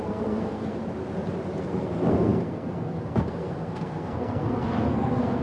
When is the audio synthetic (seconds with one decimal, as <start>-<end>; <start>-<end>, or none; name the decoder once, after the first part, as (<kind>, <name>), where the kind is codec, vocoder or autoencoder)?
0.0-0.8 (codec, SNAC); 1.6-5.4